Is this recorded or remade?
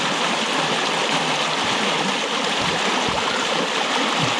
recorded